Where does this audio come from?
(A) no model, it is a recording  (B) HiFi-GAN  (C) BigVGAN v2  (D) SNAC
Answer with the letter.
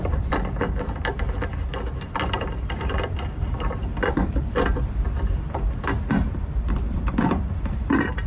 C